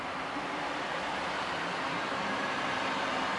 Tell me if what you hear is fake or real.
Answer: real